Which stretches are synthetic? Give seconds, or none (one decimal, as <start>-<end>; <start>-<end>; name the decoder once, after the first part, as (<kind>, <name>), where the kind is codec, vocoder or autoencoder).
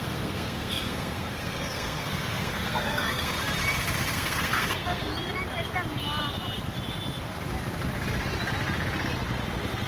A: 0.0-3.3 (codec, SNAC); 4.1-5.1